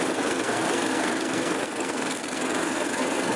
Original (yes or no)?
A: no